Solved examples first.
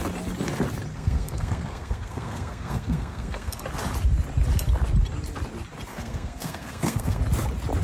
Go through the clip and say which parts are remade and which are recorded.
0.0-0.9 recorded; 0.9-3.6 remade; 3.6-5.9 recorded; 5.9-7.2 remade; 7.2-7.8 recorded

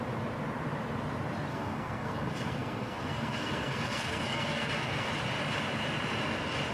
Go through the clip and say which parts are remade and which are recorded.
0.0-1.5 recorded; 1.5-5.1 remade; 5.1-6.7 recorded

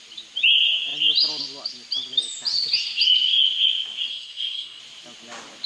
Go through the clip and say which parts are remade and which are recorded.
0.0-4.1 recorded; 4.1-4.8 remade; 4.8-5.7 recorded

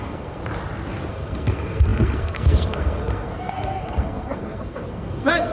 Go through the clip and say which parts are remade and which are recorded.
0.0-0.4 remade; 0.4-1.1 recorded; 1.1-5.5 remade

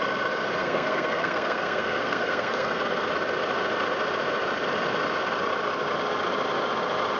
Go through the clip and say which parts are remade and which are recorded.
0.0-0.6 recorded; 0.6-3.1 remade; 3.1-7.2 recorded